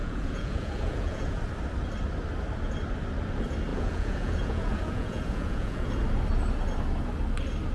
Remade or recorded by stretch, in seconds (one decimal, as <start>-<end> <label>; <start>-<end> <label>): 0.0-1.4 remade; 1.4-3.7 recorded; 3.7-5.9 remade; 5.9-7.7 recorded